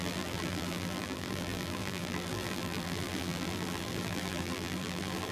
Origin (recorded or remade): remade